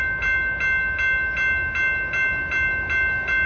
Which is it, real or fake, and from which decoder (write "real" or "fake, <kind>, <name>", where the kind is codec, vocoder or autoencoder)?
real